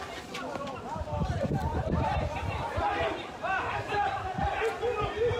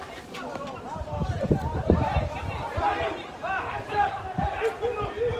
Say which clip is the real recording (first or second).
second